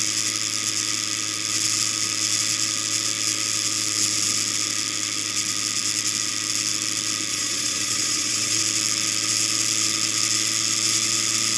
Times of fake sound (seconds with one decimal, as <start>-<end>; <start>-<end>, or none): 7.3-8.6